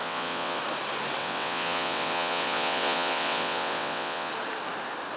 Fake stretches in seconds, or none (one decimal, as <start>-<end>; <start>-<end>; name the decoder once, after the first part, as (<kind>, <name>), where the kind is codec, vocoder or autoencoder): 0.0-0.6 (vocoder, WaveNeXt); 1.2-4.3